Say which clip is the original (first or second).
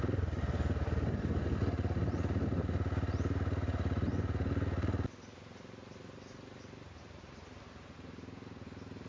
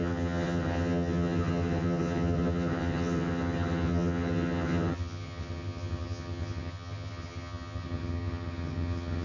first